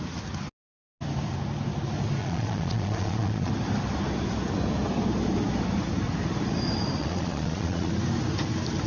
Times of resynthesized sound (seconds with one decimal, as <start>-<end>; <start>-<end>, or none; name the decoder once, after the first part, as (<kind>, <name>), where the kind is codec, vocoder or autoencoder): 2.2-3.5 (vocoder, Vocos); 7.0-7.9